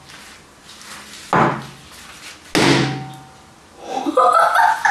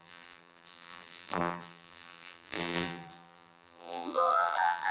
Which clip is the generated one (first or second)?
second